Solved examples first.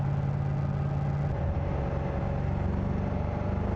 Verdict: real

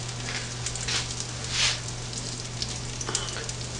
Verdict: real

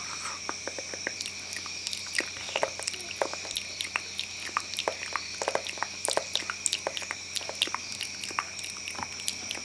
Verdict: real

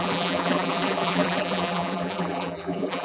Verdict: fake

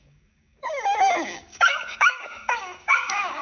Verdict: fake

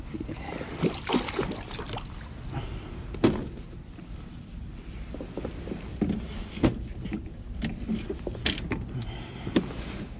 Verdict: real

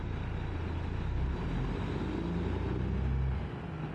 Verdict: real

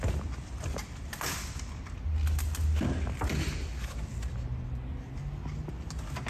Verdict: real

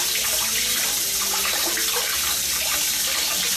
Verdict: real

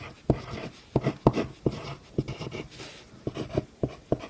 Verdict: real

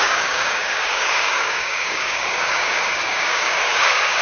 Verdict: fake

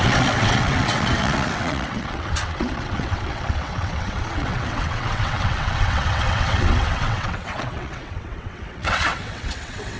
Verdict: fake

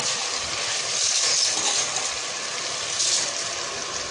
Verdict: real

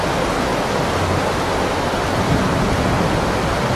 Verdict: real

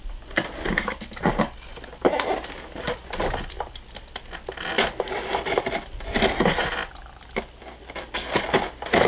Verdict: real